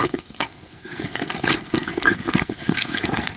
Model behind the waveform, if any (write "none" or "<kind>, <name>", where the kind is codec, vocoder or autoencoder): codec, SNAC